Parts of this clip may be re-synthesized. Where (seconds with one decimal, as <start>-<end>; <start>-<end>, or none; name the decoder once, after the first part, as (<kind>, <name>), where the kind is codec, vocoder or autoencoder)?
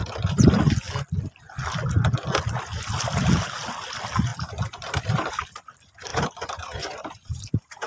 4.3-5.3 (vocoder, BigVGAN v2); 6.1-7.9